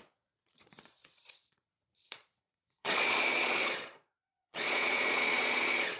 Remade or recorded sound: remade